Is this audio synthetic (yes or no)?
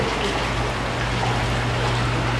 no